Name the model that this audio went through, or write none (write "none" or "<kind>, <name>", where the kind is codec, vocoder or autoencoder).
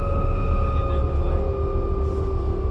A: none